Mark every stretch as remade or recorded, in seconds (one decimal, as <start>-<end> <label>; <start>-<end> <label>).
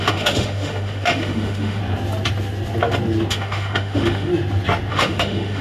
0.0-1.8 remade; 1.8-3.3 recorded; 3.3-4.3 remade; 4.3-4.9 recorded; 4.9-5.6 remade